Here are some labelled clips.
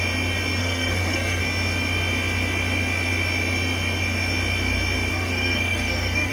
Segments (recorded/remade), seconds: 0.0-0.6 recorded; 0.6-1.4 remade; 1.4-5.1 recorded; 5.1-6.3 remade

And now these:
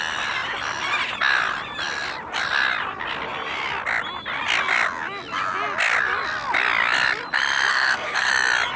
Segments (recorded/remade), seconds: 0.0-7.7 recorded; 7.7-8.3 remade; 8.3-8.8 recorded